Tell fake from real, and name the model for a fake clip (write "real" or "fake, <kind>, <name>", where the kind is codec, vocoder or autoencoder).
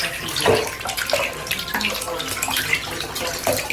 real